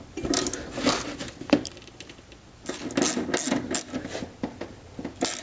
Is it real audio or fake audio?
real